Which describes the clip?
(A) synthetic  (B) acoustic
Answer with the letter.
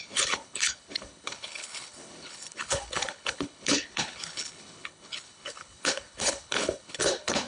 A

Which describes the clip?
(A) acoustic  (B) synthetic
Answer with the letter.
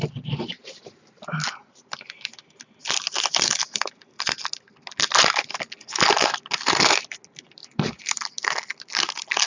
A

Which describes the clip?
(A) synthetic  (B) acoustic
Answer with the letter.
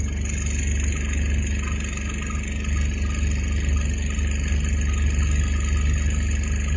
B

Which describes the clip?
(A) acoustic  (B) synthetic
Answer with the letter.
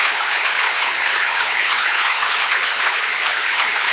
B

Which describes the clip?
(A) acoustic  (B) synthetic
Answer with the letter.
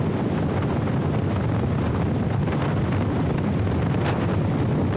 A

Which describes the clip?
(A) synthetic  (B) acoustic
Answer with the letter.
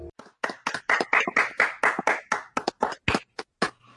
B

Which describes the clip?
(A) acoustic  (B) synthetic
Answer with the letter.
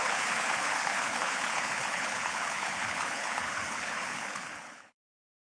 B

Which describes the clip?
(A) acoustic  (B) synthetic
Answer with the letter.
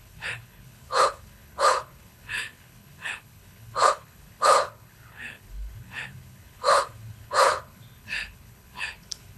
B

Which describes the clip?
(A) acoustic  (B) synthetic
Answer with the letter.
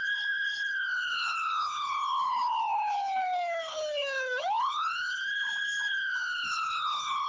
B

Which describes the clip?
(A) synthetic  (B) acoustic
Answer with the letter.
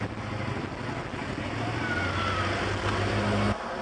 B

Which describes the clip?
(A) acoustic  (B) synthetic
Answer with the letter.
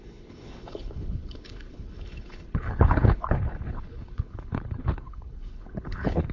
B